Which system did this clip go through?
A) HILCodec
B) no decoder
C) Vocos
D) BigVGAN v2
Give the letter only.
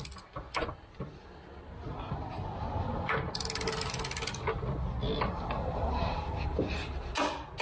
B